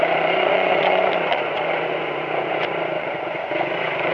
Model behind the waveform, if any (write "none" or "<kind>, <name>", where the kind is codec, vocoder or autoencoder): vocoder, Vocos